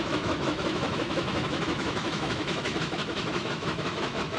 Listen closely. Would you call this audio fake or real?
fake